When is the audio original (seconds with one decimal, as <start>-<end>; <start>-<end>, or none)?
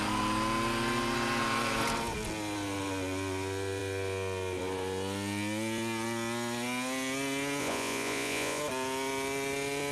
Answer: 0.0-7.6; 8.6-9.9